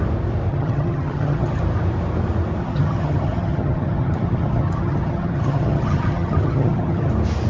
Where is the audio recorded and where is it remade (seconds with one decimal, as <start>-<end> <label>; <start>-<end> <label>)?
0.0-0.5 recorded; 0.5-1.6 remade; 1.6-2.6 recorded; 2.6-7.1 remade; 7.1-7.5 recorded